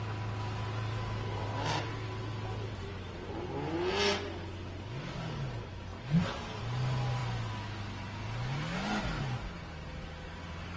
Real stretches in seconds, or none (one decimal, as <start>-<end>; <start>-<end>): 0.0-10.8